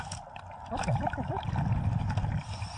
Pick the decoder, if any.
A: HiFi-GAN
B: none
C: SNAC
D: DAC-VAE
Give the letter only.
B